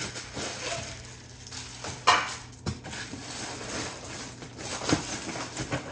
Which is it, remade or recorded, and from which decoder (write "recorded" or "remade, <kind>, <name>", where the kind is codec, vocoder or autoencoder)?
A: recorded